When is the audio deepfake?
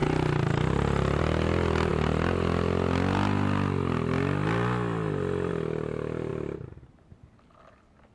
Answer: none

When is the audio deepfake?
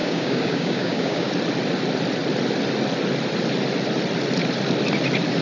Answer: 0.0-1.3 (codec, DAC)